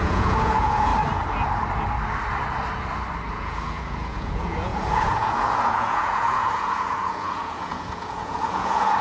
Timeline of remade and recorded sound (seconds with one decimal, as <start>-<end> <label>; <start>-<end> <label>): 0.0-0.9 remade; 0.9-3.3 recorded; 3.3-9.0 remade